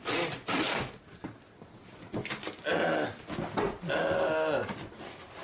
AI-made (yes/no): no